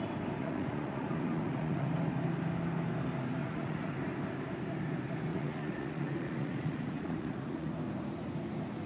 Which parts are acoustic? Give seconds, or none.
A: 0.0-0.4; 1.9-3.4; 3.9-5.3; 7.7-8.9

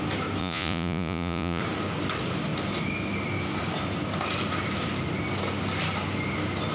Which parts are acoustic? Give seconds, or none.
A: 0.0-0.4; 1.6-6.7

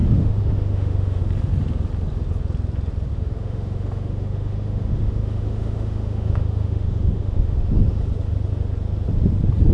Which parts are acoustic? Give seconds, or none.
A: 1.2-3.1; 8.0-9.7

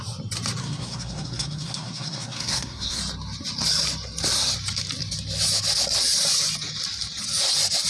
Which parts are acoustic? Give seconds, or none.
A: 0.0-0.6; 3.0-7.9

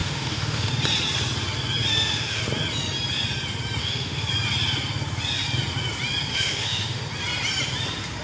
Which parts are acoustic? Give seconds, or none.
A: 0.7-1.9; 2.4-3.8; 4.3-6.3; 7.0-8.2

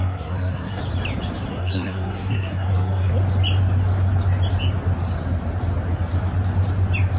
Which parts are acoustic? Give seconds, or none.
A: 0.8-1.5; 3.1-7.2